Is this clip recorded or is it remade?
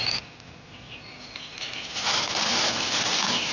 recorded